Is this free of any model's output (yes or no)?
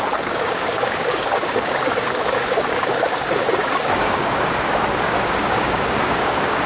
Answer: no